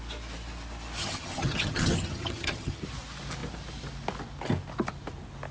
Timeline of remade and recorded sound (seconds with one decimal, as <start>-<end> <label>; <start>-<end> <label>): 0.0-1.0 recorded; 1.0-2.8 remade; 2.8-5.5 recorded